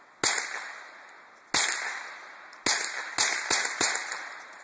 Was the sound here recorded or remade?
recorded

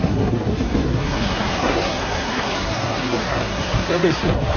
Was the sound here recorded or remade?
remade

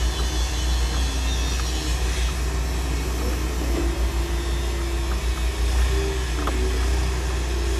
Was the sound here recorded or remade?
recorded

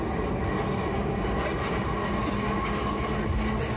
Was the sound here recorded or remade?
recorded